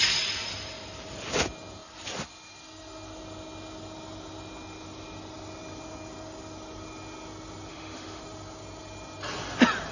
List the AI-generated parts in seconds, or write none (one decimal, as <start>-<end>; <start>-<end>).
7.7-8.2